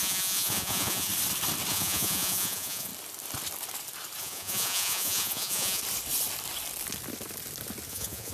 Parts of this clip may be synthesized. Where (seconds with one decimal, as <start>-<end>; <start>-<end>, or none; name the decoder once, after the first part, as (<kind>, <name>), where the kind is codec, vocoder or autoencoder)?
0.0-1.1 (vocoder, Vocos); 1.7-2.9; 4.2-5.8; 7.9-8.3